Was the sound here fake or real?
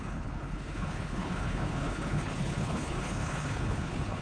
fake